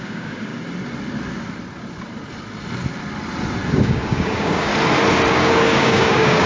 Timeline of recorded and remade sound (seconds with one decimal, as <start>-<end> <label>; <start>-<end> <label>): 0.0-0.5 remade; 0.5-3.7 recorded; 3.7-4.7 remade; 4.7-5.3 recorded; 5.3-6.5 remade